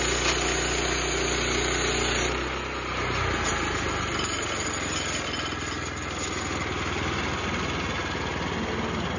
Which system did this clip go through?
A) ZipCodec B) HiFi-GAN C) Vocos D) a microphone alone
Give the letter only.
D